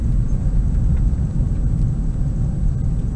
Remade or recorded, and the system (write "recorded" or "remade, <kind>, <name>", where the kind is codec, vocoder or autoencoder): recorded